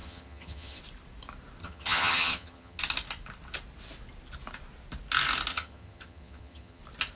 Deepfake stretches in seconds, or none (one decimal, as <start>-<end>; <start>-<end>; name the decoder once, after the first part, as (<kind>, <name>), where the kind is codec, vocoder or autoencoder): 0.0-0.8 (vocoder, HiFi-GAN); 1.6-2.8; 5.5-6.8